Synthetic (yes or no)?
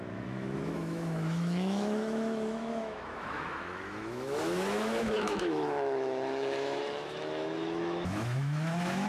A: yes